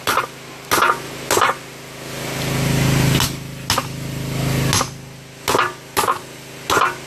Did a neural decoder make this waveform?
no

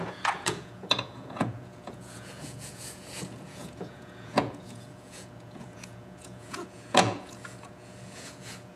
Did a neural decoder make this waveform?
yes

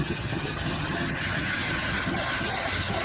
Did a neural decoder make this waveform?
yes